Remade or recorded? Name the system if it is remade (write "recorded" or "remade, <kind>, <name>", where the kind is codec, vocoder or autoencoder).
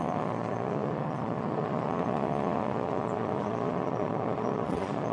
remade, vocoder, Vocos